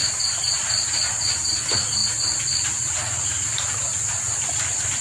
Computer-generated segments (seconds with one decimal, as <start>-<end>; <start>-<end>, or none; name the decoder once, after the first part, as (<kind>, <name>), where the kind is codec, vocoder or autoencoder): none

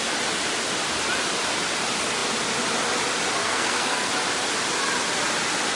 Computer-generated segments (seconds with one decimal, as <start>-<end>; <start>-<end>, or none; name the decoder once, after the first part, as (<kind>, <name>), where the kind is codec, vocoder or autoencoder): 3.4-4.1 (codec, SNAC)

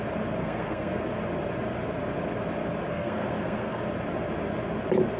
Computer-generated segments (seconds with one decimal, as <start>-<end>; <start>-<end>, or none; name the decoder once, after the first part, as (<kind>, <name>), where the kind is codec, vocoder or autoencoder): 0.4-1.0 (codec, SNAC); 2.9-3.8

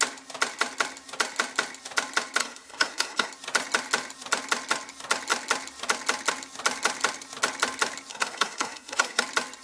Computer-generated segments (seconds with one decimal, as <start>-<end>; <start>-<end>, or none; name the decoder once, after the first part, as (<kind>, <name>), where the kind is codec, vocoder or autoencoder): 2.4-3.3 (codec, SNAC); 8.1-9.2